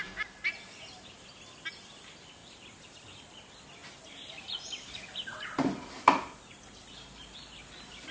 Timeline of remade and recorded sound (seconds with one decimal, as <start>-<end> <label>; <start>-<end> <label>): 0.0-2.4 recorded; 2.4-3.3 remade; 3.3-3.8 recorded; 3.8-8.1 remade